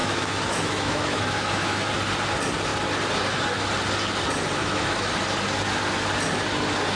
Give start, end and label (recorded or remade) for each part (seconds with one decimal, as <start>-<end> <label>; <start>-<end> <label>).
0.0-1.9 remade; 1.9-4.6 recorded; 4.6-5.1 remade; 5.1-7.0 recorded